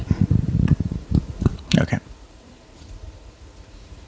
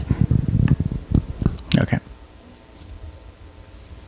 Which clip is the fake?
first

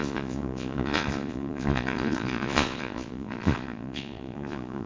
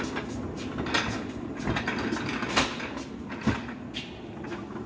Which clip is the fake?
first